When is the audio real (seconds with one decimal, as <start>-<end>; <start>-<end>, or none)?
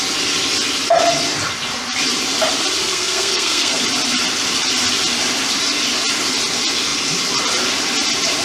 0.0-2.8; 3.8-8.4